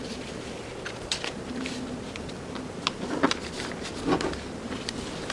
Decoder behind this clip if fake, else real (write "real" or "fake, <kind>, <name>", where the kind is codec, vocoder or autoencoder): fake, vocoder, BigVGAN v2